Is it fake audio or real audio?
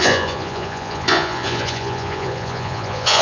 fake